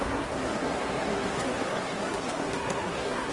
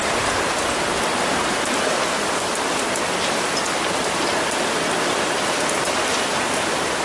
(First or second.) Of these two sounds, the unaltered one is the second